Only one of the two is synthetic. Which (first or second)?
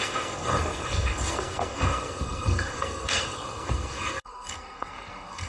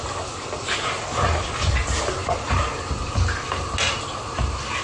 first